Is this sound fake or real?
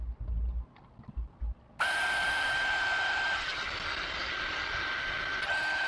real